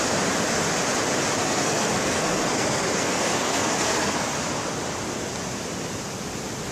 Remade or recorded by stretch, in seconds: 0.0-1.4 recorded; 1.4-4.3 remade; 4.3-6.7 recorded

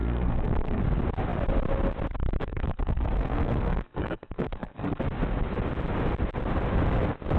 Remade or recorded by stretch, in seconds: 0.0-0.8 remade; 0.8-2.4 recorded; 2.4-5.0 remade; 5.0-7.4 recorded

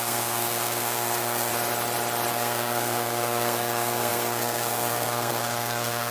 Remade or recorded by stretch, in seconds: 0.0-1.5 remade; 1.5-2.3 recorded; 2.3-6.1 remade

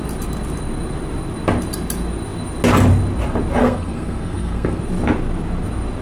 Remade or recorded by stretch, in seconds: 0.0-3.6 recorded; 3.6-4.8 remade; 4.8-6.0 recorded

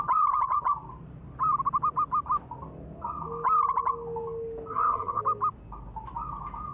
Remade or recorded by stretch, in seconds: 0.0-4.7 recorded; 4.7-5.2 remade; 5.2-6.7 recorded